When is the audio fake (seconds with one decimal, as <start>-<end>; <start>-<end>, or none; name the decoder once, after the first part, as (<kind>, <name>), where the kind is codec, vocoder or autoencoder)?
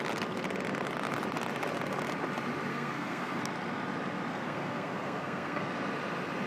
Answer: 2.7-3.4 (codec, SNAC); 4.3-5.7